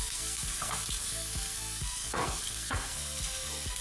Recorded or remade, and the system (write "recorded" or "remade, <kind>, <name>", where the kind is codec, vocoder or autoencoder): remade, codec, SNAC